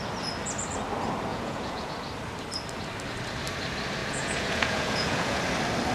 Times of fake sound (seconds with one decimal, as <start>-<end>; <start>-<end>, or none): 1.3-1.9; 4.0-5.4